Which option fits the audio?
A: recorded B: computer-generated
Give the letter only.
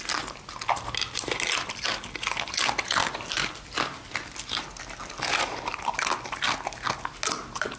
A